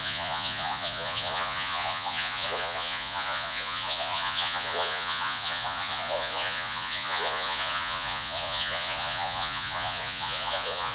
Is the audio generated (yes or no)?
yes